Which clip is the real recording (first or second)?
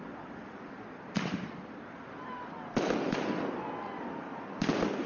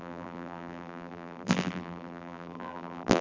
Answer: first